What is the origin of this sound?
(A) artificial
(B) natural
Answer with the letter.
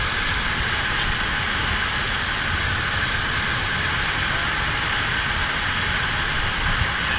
B